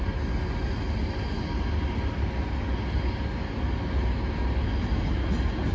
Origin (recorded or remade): recorded